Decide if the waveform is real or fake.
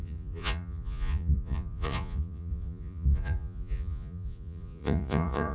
fake